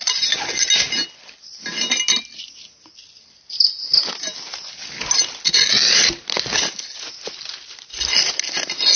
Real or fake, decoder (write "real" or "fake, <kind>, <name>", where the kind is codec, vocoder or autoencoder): real